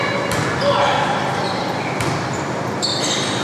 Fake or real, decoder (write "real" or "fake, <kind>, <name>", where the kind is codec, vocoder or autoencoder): real